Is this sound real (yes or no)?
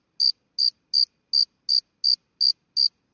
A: yes